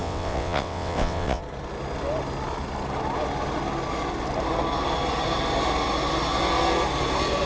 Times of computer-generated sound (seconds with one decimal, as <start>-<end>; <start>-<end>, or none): 0.0-1.4